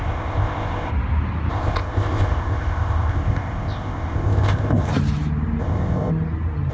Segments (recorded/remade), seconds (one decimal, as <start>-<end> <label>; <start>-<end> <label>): 0.0-0.9 remade; 0.9-1.5 recorded; 1.5-4.9 remade; 4.9-5.6 recorded; 5.6-6.1 remade; 6.1-6.7 recorded